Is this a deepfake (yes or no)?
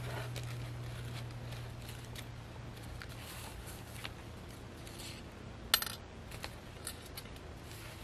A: no